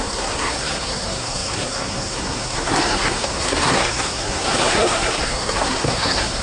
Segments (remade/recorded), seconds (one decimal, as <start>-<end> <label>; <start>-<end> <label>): 0.0-6.4 remade